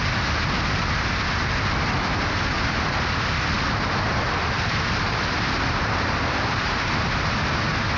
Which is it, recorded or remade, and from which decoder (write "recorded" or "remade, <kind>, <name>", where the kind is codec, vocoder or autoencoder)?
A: recorded